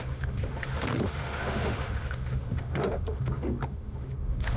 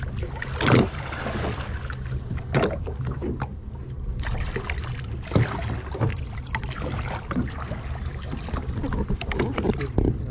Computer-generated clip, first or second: first